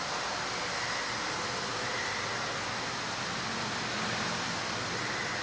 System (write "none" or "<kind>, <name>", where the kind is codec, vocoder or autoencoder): none